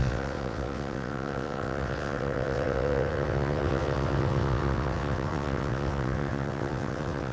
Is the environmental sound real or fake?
fake